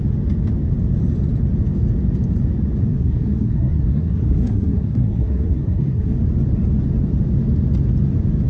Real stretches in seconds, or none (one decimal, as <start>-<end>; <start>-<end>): 0.0-2.9; 6.2-8.5